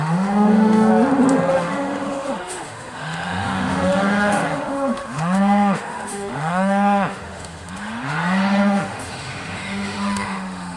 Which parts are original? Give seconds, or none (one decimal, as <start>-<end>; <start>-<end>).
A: 0.9-1.5